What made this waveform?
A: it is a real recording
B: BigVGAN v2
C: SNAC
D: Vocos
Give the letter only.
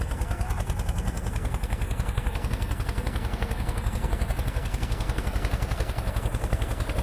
C